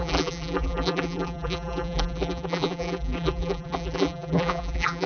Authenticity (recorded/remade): remade